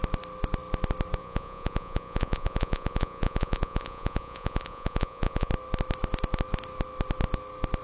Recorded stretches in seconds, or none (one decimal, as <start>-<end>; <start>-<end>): 0.0-1.2; 5.5-7.8